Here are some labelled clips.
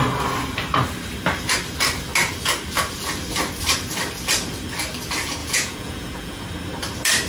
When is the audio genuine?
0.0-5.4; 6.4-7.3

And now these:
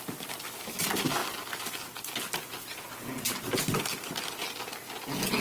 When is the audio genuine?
0.0-5.4

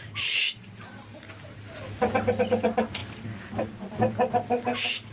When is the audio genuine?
0.0-5.1

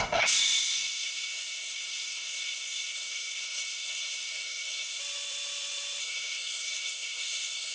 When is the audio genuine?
5.0-6.0

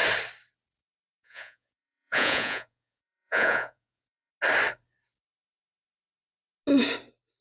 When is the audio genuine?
0.0-1.1; 4.3-7.4

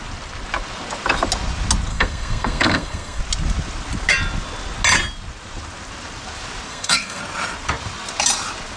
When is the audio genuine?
0.0-1.9; 3.2-6.7; 7.2-8.8